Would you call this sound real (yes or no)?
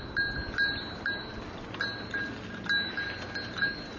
yes